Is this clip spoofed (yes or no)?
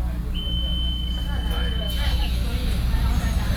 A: no